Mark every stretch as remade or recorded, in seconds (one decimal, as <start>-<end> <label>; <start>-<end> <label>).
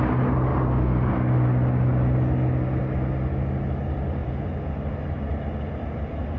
0.0-4.2 recorded; 4.2-4.7 remade; 4.7-6.4 recorded